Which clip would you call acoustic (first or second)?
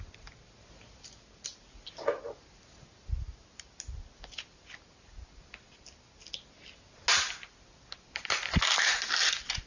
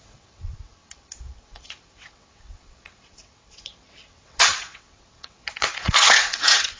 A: first